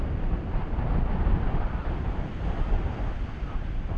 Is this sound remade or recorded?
recorded